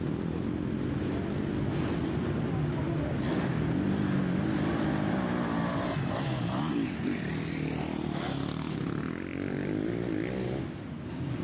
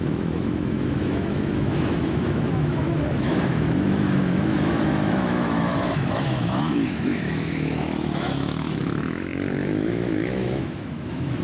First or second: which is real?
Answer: first